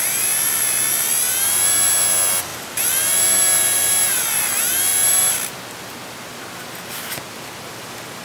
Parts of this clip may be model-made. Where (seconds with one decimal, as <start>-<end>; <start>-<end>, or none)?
2.5-4.2; 4.9-5.5

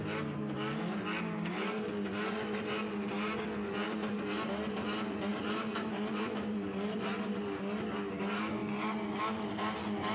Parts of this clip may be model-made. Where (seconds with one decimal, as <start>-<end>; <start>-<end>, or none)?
5.3-7.2